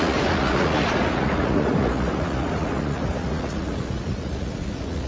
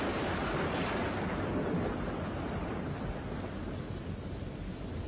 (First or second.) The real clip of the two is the second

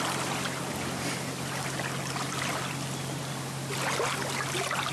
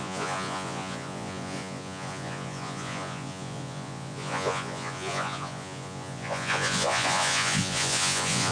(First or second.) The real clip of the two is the first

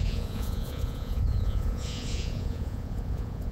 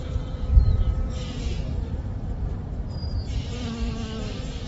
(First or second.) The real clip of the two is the second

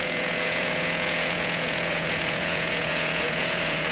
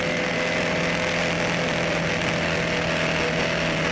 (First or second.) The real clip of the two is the second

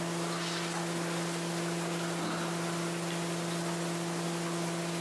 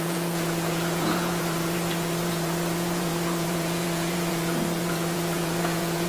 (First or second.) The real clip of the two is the first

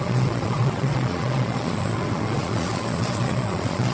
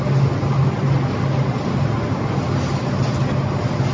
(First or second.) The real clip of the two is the second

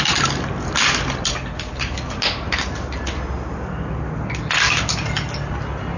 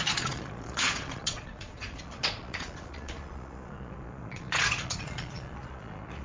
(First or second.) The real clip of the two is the first